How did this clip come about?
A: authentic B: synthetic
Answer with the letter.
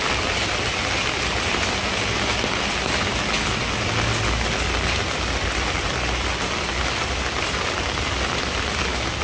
A